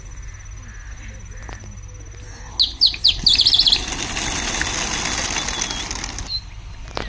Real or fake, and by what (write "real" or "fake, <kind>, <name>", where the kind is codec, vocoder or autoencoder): real